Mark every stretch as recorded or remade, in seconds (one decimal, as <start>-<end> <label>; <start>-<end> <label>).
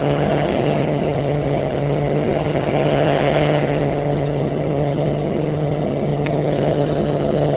0.0-7.6 remade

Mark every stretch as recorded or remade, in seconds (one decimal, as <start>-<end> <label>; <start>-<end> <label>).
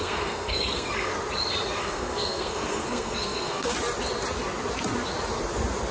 0.0-1.1 remade; 1.1-1.8 recorded; 1.8-3.7 remade; 3.7-5.9 recorded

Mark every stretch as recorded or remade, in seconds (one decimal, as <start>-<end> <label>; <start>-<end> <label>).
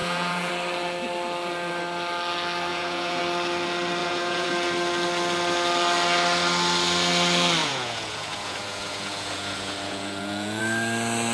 0.0-0.5 remade; 0.5-2.7 recorded; 2.7-3.2 remade; 3.2-4.0 recorded; 4.0-4.5 remade; 4.5-7.6 recorded; 7.6-10.6 remade; 10.6-11.3 recorded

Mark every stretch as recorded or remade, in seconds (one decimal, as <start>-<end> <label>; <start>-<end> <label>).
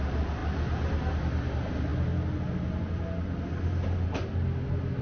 0.0-5.0 recorded